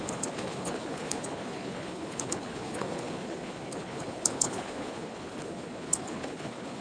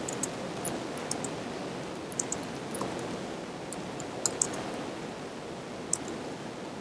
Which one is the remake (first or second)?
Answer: first